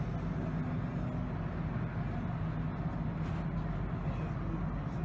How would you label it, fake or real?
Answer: real